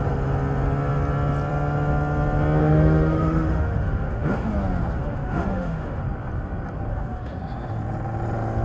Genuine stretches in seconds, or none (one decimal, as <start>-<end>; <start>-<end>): 0.0-2.6; 4.5-5.0; 6.0-6.9; 7.4-8.6